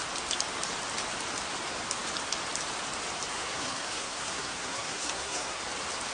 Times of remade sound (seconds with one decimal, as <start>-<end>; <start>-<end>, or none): 3.3-5.6

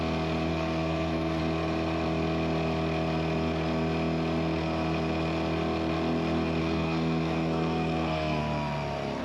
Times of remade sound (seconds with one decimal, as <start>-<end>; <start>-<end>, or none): 0.5-1.4; 6.6-8.4

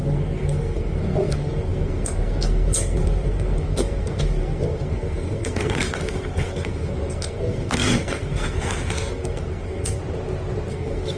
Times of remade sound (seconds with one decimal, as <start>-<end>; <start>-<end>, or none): 0.0-10.0; 10.7-11.2